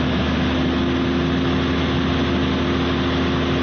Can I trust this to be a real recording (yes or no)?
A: yes